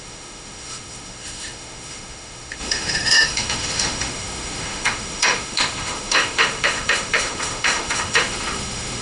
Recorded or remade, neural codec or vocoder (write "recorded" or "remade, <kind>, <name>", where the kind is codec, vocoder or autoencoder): remade, autoencoder, DAC-VAE